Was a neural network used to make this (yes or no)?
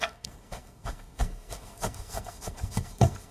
yes